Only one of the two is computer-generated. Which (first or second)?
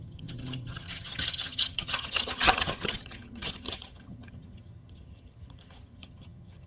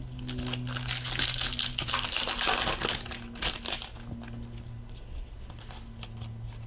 first